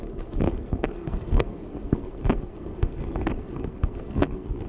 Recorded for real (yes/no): no